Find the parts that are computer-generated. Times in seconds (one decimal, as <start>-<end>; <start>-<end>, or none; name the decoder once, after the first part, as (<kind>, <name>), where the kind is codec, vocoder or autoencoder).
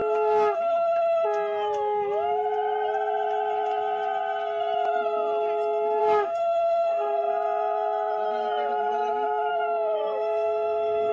6.0-7.3 (codec, SNAC); 9.5-11.1